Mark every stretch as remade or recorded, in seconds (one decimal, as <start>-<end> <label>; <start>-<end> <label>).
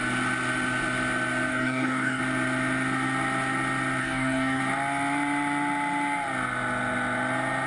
0.0-1.5 recorded; 1.5-2.2 remade; 2.2-4.0 recorded; 4.0-4.6 remade; 4.6-7.7 recorded